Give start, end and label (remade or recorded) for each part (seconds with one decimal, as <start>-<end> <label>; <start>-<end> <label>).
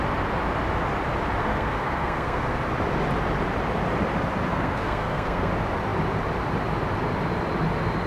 0.0-1.4 recorded; 1.4-2.6 remade; 2.6-4.5 recorded; 4.5-5.5 remade; 5.5-8.1 recorded